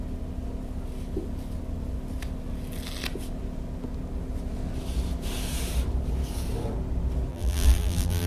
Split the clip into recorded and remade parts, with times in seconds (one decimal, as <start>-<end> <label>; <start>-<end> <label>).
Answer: 0.0-7.3 recorded; 7.3-8.3 remade